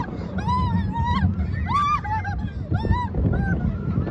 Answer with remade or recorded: recorded